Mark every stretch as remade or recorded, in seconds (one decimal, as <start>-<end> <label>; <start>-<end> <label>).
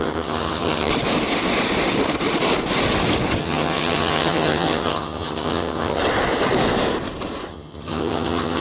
0.0-0.9 remade; 0.9-3.4 recorded; 3.4-6.0 remade; 6.0-7.5 recorded; 7.5-8.6 remade